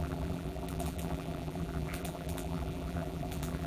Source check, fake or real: fake